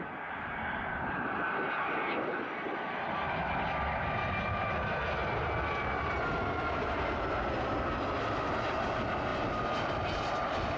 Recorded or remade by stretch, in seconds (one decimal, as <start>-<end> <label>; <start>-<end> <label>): 0.0-10.8 recorded